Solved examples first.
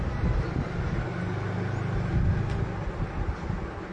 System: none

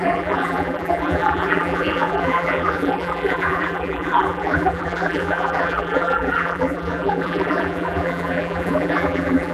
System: vocoder, BigVGAN v2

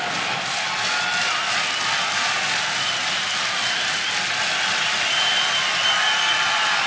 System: none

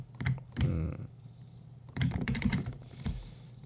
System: vocoder, BigVGAN v2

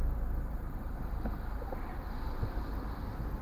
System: none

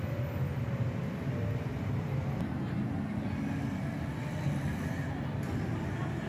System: none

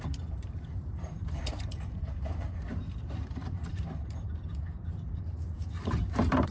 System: vocoder, BigVGAN v2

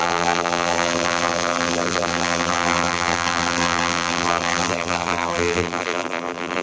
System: vocoder, BigVGAN v2